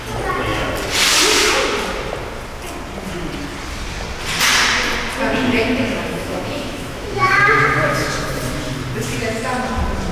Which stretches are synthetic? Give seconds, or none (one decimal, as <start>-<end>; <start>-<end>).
5.6-8.4